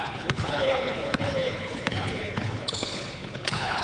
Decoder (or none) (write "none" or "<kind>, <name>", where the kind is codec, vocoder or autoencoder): codec, HILCodec